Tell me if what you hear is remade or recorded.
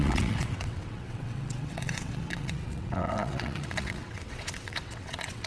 remade